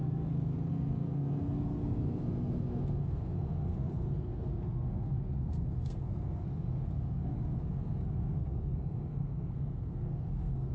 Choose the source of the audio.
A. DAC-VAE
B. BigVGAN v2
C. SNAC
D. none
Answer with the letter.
C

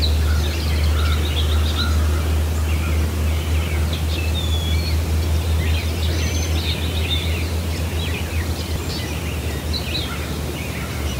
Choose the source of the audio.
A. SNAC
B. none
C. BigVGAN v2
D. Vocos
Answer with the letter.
B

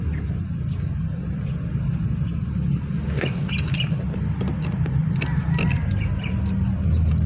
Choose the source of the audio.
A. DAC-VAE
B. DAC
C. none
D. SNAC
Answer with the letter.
C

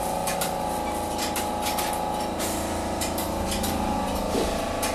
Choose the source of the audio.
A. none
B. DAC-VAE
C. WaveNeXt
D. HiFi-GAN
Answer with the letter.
A